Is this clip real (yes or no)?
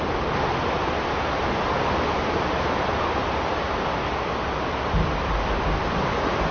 yes